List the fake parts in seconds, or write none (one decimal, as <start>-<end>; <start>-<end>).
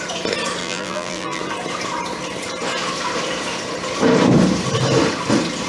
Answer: 0.6-1.4